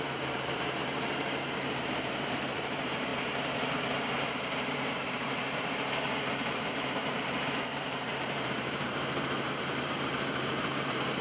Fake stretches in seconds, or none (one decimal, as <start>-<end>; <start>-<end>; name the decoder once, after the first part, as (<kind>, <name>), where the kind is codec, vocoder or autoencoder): 0.0-0.8 (vocoder, BigVGAN v2); 1.4-11.2